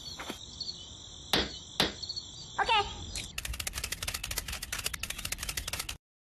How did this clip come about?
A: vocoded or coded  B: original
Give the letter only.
B